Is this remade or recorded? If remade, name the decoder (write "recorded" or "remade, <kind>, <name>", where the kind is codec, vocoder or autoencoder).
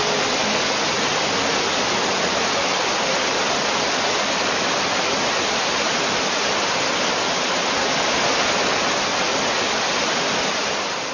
recorded